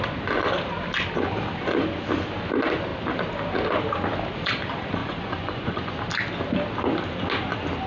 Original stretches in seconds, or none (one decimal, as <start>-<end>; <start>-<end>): 0.0-5.0; 5.9-7.9